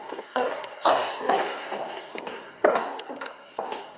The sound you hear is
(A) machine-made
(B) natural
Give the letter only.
A